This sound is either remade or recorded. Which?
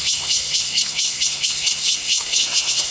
remade